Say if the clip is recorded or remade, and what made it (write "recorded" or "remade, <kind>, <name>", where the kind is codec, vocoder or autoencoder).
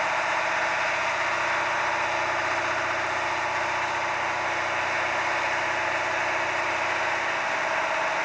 recorded